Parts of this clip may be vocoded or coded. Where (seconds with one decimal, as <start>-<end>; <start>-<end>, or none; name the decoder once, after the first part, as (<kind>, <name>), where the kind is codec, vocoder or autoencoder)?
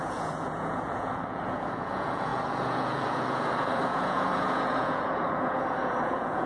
0.0-6.5 (vocoder, Vocos)